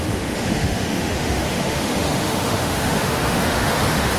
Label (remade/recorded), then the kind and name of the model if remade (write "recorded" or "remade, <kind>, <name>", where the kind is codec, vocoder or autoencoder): remade, autoencoder, DAC-VAE